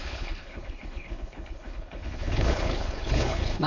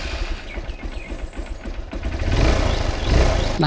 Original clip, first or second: second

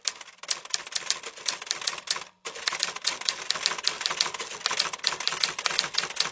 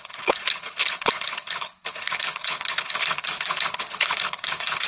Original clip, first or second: first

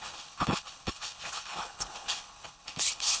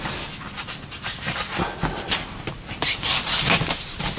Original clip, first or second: second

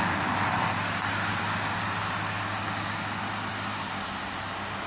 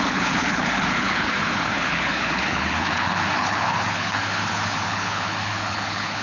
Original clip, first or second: first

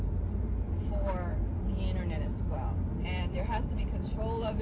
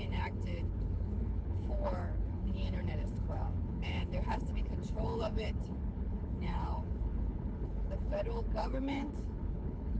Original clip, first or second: first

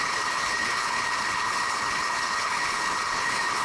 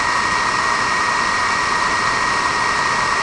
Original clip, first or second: second